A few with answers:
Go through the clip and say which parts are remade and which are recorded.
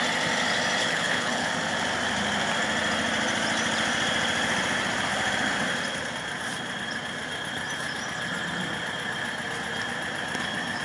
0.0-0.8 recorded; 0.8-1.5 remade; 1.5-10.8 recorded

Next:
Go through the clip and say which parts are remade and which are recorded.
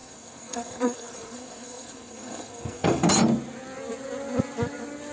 0.0-3.1 remade; 3.1-5.1 recorded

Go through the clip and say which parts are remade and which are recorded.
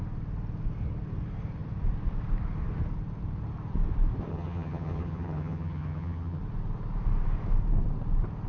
0.0-4.3 recorded; 4.3-6.4 remade; 6.4-8.5 recorded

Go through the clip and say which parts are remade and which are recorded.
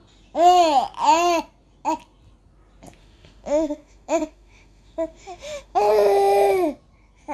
0.0-3.0 recorded; 3.0-5.9 remade; 5.9-7.3 recorded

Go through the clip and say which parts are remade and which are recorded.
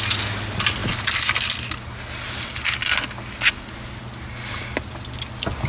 0.0-5.7 recorded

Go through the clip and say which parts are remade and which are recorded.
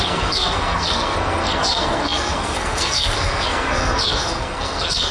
0.0-5.1 remade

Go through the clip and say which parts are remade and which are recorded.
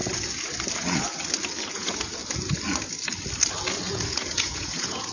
0.0-1.7 recorded; 1.7-2.2 remade; 2.2-3.9 recorded; 3.9-5.1 remade